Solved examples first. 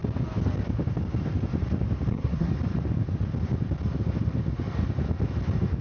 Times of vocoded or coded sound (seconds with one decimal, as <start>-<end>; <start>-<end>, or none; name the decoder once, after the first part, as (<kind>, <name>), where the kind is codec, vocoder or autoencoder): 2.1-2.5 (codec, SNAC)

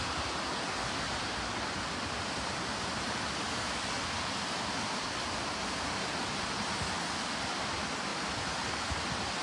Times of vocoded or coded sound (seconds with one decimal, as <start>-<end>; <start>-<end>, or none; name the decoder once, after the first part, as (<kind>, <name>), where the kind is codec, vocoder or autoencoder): none

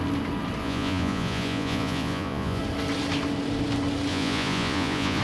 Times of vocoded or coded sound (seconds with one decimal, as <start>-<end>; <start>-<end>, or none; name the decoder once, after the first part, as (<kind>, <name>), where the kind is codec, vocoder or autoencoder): 0.6-2.6 (vocoder, Vocos); 4.1-5.2